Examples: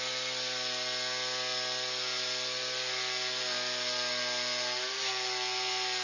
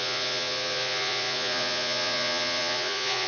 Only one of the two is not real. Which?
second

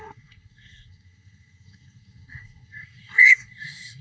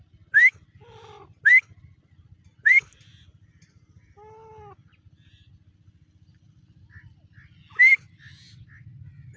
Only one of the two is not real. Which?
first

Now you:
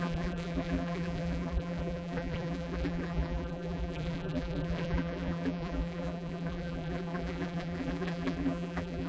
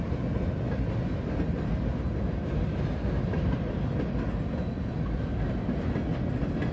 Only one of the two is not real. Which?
first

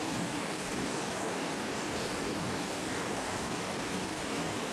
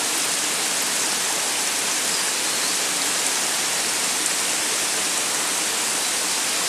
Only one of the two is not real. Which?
first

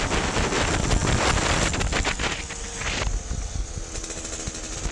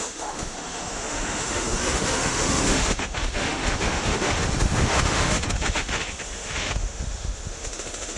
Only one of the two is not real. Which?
second